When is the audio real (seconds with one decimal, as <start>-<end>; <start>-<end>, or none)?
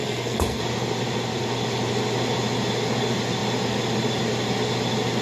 0.6-5.2